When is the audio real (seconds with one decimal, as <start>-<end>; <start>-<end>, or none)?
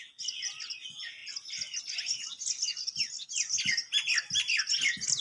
0.0-5.2